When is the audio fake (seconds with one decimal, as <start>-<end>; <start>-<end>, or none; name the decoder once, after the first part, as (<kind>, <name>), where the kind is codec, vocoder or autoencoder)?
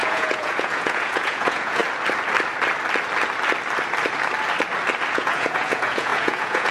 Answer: 0.0-1.8 (vocoder, Vocos); 5.1-6.7